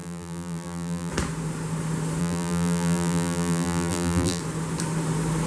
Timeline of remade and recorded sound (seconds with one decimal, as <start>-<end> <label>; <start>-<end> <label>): 0.0-1.1 remade; 1.1-2.2 recorded; 2.2-4.4 remade; 4.4-5.5 recorded